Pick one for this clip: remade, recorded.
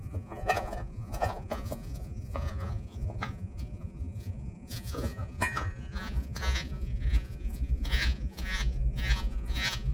remade